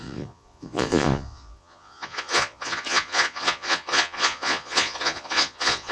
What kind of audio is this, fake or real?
fake